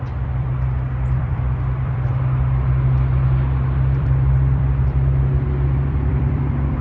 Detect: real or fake fake